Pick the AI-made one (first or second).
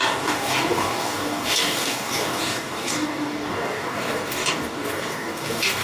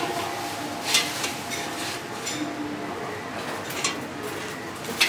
first